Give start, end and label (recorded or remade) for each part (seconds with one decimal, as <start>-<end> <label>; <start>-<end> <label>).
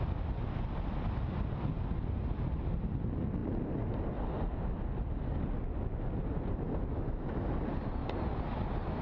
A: 0.0-6.9 recorded; 6.9-7.5 remade; 7.5-9.0 recorded